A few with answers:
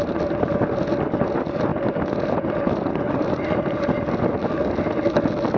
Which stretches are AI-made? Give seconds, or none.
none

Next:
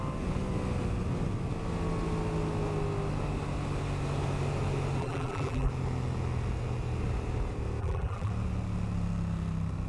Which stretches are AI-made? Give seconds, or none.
5.0-5.7 (vocoder, BigVGAN v2); 7.8-8.3